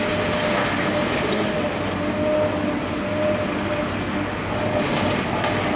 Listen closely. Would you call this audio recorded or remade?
recorded